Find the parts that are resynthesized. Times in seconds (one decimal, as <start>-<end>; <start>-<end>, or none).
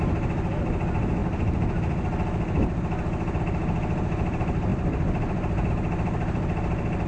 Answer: none